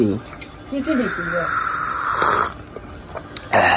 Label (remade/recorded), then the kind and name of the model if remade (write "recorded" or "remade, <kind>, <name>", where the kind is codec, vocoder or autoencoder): recorded